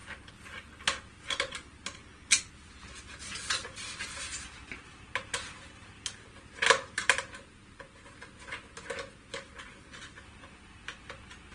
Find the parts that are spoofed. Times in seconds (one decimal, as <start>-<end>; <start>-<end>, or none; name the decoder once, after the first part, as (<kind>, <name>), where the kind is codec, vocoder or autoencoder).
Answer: none